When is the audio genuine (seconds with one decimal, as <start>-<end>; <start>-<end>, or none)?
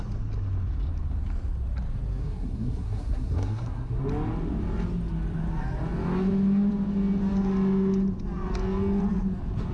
0.0-2.2; 4.0-9.7